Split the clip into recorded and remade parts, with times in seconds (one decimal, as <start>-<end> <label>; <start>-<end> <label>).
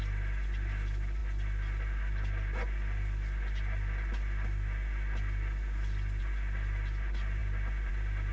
0.0-8.3 recorded